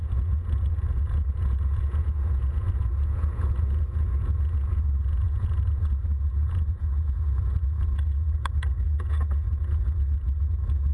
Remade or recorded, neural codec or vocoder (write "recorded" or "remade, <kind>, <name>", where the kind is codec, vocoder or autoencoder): remade, vocoder, Vocos